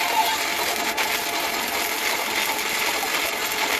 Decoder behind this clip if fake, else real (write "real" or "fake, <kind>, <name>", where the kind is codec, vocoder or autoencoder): real